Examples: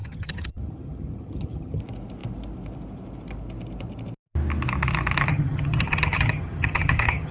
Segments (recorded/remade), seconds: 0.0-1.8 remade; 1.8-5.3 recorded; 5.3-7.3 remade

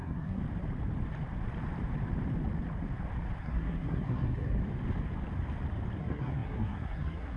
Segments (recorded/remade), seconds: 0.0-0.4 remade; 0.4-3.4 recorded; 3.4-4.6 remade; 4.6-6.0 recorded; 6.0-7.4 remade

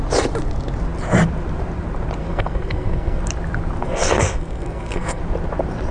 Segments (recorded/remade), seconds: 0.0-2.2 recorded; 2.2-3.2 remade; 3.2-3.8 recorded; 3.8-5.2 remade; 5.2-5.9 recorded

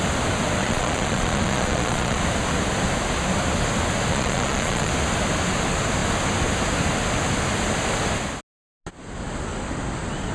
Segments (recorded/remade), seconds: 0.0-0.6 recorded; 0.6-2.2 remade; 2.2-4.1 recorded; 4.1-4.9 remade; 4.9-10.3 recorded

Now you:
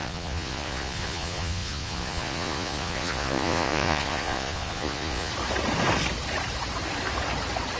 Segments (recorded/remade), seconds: 0.0-5.3 remade; 5.3-7.8 recorded

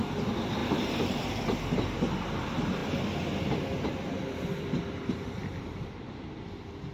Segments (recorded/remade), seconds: 0.0-0.6 recorded; 0.6-1.4 remade; 1.4-6.9 recorded